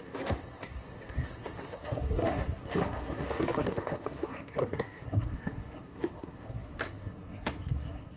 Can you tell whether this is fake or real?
fake